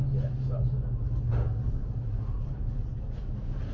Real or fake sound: real